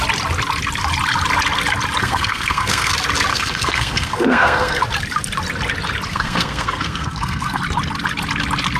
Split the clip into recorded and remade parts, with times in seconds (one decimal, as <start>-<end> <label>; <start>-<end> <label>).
0.0-2.0 recorded; 2.0-2.9 remade; 2.9-3.3 recorded; 3.3-4.8 remade; 4.8-6.1 recorded; 6.1-7.6 remade; 7.6-8.8 recorded